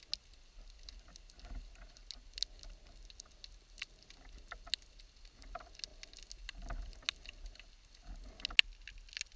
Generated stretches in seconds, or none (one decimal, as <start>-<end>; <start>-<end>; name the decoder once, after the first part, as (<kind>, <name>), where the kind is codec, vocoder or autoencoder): 2.0-3.1 (vocoder, BigVGAN v2)

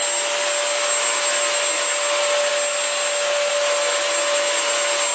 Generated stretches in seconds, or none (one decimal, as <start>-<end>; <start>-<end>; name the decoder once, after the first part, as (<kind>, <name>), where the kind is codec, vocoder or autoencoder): none

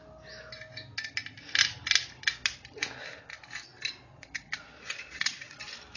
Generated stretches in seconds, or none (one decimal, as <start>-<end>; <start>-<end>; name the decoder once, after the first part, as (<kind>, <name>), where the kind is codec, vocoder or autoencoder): 4.1-5.6 (vocoder, Vocos)

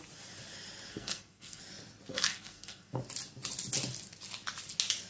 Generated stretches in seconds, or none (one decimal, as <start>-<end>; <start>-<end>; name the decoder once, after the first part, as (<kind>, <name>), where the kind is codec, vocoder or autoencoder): 0.9-1.6 (codec, SNAC); 2.1-3.0

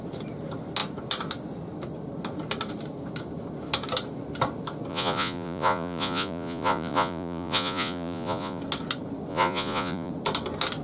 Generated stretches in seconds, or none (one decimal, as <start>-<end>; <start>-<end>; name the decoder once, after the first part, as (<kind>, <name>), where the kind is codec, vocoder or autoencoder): 4.9-8.6 (vocoder, Vocos); 9.3-10.1

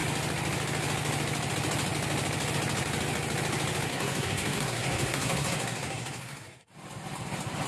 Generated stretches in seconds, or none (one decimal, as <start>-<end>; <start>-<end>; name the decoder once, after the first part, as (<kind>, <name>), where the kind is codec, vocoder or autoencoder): 3.9-6.7 (codec, SNAC)

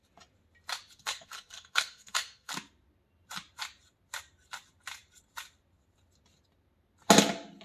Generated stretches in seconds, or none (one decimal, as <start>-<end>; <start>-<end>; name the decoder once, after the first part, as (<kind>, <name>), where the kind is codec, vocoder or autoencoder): 1.0-2.5 (codec, SNAC)

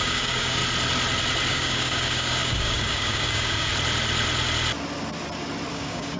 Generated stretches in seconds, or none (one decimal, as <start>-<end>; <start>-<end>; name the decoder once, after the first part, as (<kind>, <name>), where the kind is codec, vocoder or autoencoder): 0.0-0.6 (codec, DAC); 1.5-3.7; 5.7-6.2